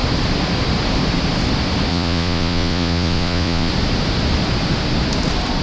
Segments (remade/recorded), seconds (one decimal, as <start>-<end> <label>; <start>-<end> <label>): 0.0-1.9 recorded; 1.9-3.7 remade; 3.7-5.6 recorded